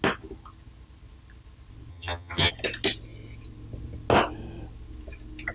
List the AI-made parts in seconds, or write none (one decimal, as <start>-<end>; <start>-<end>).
1.9-2.5